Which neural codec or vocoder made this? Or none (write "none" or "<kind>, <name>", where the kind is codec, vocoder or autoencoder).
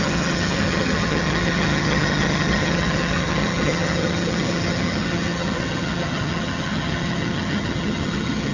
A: vocoder, HiFi-GAN